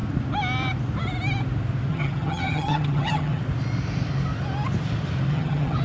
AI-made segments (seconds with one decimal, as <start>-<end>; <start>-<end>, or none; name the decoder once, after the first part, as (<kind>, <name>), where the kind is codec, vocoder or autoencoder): 1.9-3.4 (vocoder, HiFi-GAN); 5.3-5.8